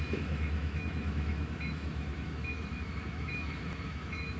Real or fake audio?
fake